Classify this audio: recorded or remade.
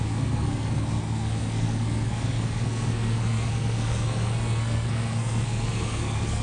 remade